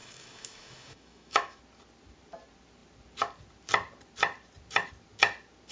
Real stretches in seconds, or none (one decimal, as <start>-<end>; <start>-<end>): 1.6-5.7